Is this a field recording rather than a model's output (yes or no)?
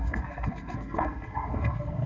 no